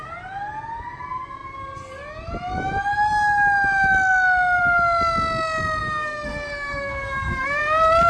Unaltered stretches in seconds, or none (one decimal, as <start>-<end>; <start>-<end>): 0.0-5.8; 7.6-8.1